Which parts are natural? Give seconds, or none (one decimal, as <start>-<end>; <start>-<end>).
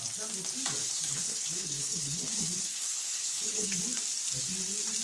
0.0-0.8; 3.8-5.0